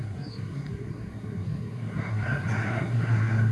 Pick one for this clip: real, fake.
fake